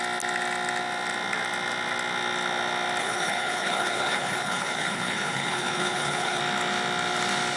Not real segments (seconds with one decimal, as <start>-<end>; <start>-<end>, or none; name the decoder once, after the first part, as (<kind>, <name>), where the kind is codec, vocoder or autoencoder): 3.0-6.4 (codec, HILCodec)